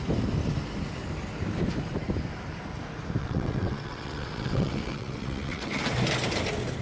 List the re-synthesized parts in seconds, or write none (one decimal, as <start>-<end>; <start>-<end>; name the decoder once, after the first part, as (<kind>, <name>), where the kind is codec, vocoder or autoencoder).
3.2-5.9 (vocoder, WaveNeXt)